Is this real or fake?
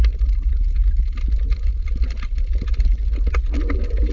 real